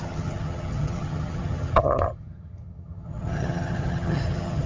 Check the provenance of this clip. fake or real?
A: fake